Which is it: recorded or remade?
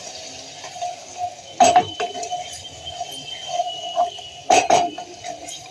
recorded